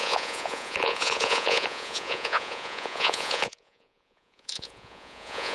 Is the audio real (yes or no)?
no